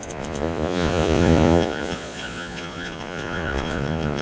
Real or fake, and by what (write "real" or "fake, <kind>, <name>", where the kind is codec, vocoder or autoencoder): fake, vocoder, Vocos